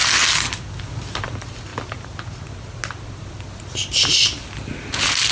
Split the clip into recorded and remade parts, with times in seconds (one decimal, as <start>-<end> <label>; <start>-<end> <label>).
0.0-5.3 recorded